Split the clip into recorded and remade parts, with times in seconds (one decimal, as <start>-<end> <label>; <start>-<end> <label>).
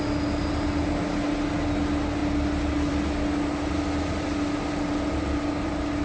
0.0-6.0 recorded